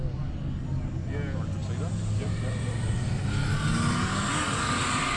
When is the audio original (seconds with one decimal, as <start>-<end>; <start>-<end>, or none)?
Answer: 0.0-5.2